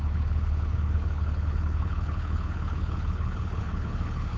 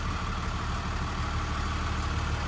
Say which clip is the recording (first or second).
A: second